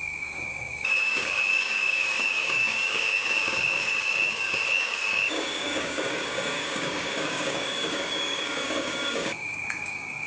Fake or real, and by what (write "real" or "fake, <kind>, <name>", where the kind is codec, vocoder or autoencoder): fake, codec, DAC